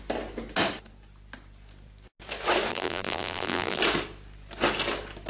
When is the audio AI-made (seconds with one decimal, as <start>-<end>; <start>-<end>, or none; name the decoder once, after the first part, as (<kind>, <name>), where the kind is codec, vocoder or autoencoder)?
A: 2.7-3.8 (vocoder, BigVGAN v2)